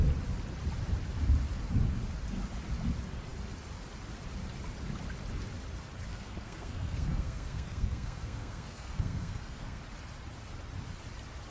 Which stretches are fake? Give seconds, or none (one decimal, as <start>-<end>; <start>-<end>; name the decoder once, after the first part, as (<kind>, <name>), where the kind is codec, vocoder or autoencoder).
6.1-9.8 (codec, SNAC)